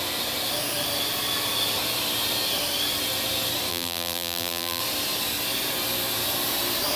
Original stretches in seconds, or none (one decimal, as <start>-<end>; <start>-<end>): 0.0-3.7; 4.8-7.0